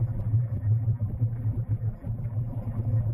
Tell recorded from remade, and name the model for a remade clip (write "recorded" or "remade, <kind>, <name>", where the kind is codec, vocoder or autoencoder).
remade, vocoder, BigVGAN v2